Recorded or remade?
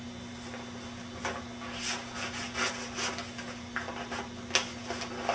recorded